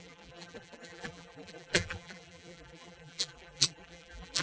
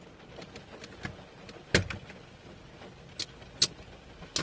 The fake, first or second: first